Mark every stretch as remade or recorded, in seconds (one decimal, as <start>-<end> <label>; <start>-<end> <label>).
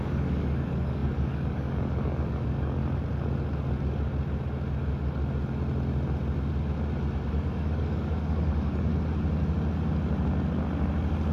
0.0-2.8 remade; 2.8-7.3 recorded; 7.3-8.9 remade; 8.9-11.3 recorded